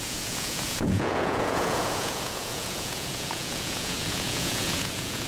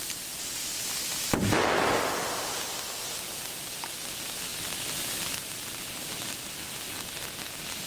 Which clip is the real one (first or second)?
second